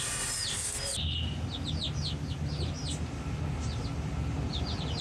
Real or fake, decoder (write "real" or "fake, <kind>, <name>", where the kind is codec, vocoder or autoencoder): real